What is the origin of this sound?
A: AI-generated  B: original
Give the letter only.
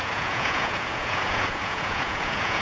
A